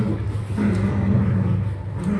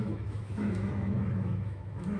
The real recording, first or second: first